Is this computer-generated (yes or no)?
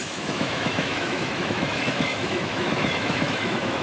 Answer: yes